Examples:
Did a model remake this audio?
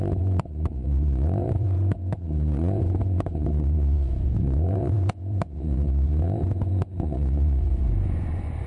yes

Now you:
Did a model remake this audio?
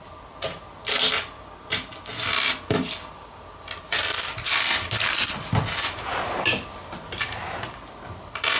no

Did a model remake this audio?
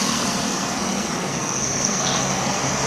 yes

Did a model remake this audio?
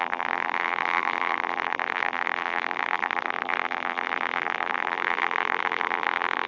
yes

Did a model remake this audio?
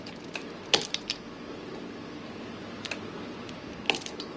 no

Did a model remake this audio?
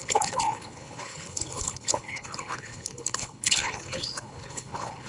yes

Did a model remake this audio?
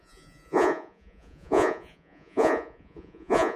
yes